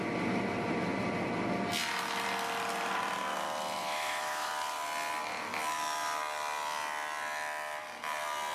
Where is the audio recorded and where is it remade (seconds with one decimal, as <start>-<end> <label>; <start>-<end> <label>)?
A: 0.0-3.8 recorded; 3.8-4.5 remade; 4.5-8.5 recorded